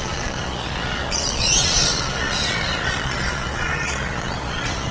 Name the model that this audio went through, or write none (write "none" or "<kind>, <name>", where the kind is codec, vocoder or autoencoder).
vocoder, Vocos